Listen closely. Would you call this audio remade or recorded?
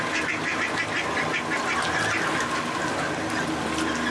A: recorded